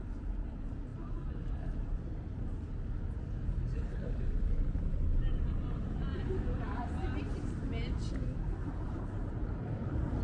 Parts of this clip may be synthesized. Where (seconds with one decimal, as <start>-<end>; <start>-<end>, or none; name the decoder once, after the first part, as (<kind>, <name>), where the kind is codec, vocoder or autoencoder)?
8.6-10.2 (vocoder, BigVGAN v2)